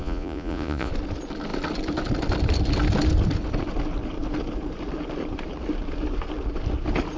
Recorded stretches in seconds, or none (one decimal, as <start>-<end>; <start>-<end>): 0.9-7.2